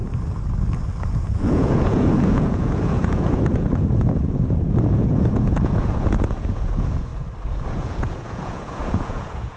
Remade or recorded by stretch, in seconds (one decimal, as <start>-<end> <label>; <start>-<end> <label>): 0.0-1.1 recorded; 1.1-7.1 remade; 7.1-7.7 recorded; 7.7-9.6 remade